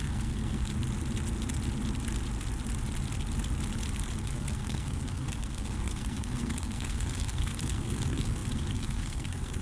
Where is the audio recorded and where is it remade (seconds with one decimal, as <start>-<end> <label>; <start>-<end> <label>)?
0.0-0.7 remade; 0.7-4.2 recorded; 4.2-9.6 remade